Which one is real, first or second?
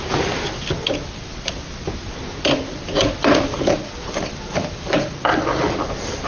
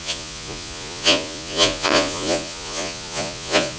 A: first